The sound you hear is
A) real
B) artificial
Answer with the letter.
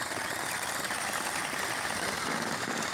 A